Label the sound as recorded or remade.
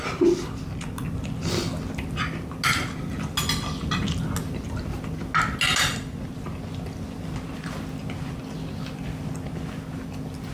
recorded